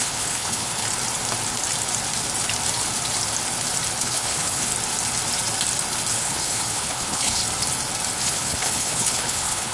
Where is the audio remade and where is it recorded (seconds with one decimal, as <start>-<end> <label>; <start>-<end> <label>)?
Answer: 0.0-0.8 remade; 0.8-4.0 recorded; 4.0-4.7 remade; 4.7-6.1 recorded; 6.1-7.4 remade; 7.4-8.2 recorded; 8.2-9.7 remade